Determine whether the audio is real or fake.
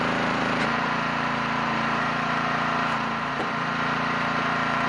fake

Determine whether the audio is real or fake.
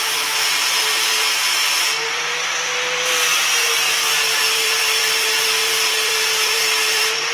fake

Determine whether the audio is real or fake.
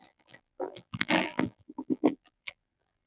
fake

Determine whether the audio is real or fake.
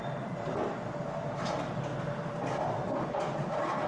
real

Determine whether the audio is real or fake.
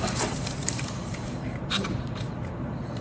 fake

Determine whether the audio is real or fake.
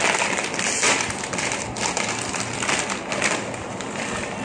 real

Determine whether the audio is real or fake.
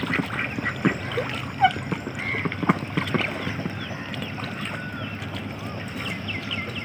real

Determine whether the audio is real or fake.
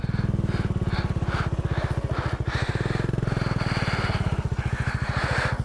real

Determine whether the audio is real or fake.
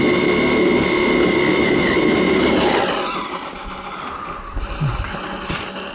real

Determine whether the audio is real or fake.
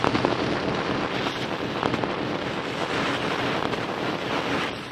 fake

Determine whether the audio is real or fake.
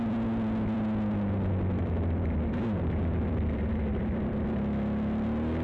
fake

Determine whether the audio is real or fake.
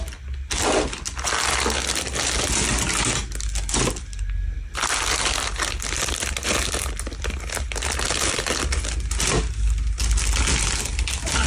real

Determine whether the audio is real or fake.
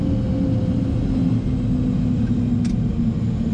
real